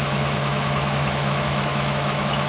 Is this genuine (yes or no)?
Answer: no